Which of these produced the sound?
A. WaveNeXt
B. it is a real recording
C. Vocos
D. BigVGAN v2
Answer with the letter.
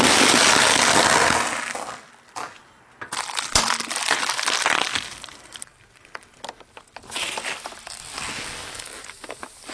B